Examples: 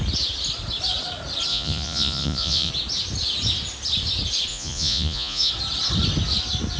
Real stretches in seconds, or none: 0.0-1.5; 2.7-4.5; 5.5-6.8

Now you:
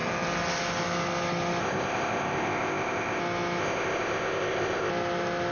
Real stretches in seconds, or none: 0.0-1.6; 3.2-3.6; 4.9-5.5

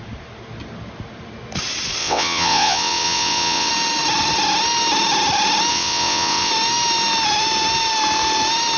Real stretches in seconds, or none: 0.0-2.0; 3.7-5.7; 6.5-8.8

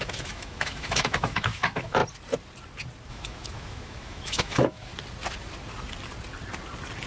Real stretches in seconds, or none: 2.0-3.1; 4.9-7.1